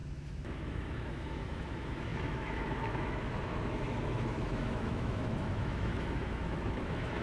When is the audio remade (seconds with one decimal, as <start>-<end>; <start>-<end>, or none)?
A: 0.0-7.2